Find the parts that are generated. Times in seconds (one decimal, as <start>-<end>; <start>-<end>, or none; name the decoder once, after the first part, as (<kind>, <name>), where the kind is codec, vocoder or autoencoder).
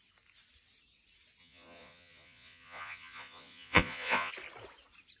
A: 1.4-4.3 (vocoder, Vocos)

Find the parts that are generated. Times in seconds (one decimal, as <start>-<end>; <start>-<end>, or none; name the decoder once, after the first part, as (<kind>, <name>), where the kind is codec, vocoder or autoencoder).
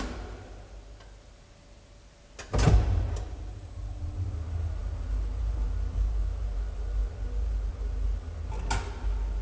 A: none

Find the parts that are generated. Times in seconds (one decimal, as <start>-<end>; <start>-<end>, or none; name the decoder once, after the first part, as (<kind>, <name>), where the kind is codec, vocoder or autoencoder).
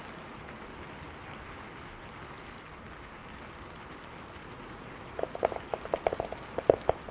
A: 4.4-5.5 (vocoder, Vocos)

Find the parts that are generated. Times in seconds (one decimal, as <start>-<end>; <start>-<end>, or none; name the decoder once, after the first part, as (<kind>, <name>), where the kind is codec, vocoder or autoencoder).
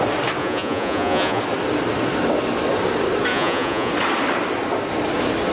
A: 0.4-1.4 (vocoder, Vocos); 3.3-3.9